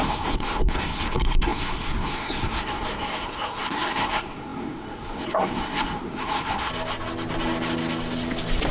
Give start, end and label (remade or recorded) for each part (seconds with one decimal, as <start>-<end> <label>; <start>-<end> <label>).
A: 0.0-6.7 remade; 6.7-8.7 recorded

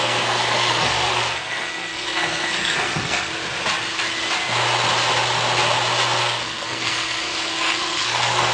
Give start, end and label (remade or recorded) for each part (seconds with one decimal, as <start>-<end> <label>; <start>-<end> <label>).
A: 0.0-3.3 remade; 3.3-6.2 recorded; 6.2-8.5 remade

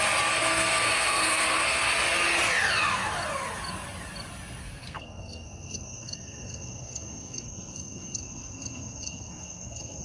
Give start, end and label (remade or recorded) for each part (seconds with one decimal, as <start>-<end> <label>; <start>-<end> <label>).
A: 0.0-0.4 recorded; 0.4-1.9 remade; 1.9-4.6 recorded; 4.6-10.0 remade

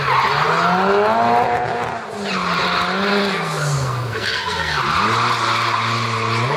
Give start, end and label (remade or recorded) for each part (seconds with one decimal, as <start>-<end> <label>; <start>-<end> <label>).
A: 0.0-3.1 recorded; 3.1-4.8 remade; 4.8-6.6 recorded

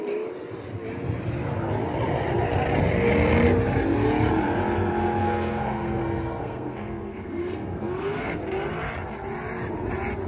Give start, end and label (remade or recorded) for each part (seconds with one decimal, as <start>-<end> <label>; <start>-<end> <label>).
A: 0.0-5.2 recorded; 5.2-8.4 remade; 8.4-10.3 recorded